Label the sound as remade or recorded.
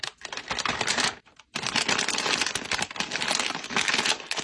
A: recorded